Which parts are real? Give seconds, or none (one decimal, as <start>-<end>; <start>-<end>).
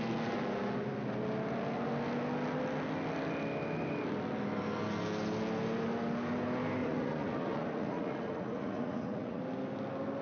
0.0-6.8; 9.4-10.2